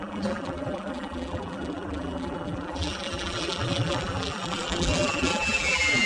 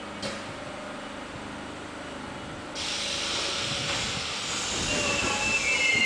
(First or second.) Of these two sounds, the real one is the second